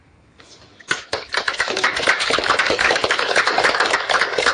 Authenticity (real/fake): fake